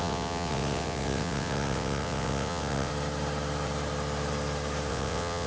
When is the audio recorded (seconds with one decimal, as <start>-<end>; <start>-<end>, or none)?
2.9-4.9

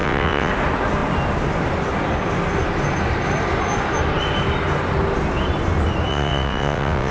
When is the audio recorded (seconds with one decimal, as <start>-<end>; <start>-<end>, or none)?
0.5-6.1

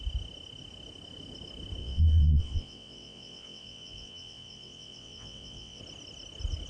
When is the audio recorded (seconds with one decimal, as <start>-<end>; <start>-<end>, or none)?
0.0-1.8; 5.8-6.7

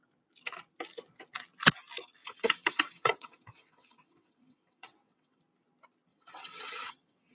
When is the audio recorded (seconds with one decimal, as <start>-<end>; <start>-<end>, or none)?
0.0-2.2; 5.4-6.1

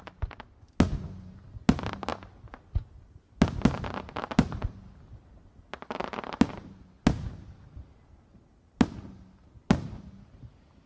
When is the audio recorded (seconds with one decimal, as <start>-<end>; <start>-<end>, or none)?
0.0-10.9